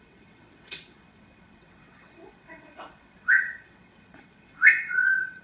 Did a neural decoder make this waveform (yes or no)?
yes